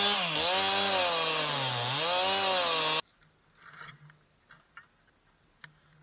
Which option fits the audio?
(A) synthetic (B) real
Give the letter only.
B